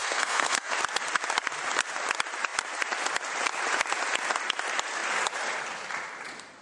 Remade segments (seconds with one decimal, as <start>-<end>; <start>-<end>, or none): 0.0-0.7

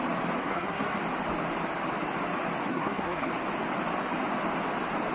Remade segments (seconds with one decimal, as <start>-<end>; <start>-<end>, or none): 0.4-1.0; 2.7-3.3

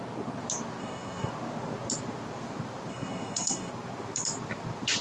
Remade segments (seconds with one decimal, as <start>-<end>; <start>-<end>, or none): 0.8-1.3; 2.9-3.7

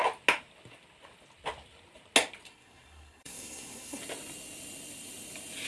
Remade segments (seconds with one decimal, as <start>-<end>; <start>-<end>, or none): 2.5-4.0

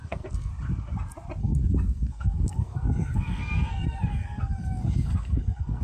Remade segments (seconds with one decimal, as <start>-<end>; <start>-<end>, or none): 0.0-0.5; 1.4-5.8

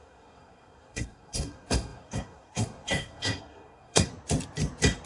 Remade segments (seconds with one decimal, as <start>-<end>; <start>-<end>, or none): 0.0-4.1

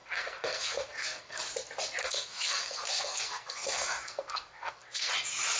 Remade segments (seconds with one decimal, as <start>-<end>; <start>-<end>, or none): 0.0-1.4; 2.0-5.1

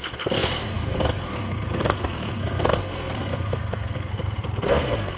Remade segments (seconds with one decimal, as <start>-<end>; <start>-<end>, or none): 0.0-4.1; 4.7-5.2